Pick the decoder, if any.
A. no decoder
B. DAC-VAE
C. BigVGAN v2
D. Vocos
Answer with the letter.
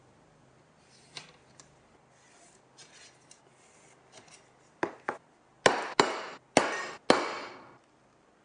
A